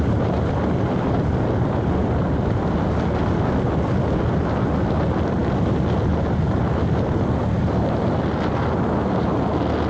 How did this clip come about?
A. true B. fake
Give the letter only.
A